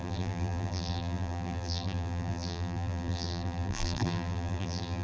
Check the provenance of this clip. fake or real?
fake